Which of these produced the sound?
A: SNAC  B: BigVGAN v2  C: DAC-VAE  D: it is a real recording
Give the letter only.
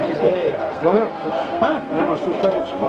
A